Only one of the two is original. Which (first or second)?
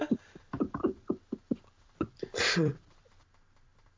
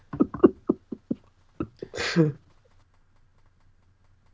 second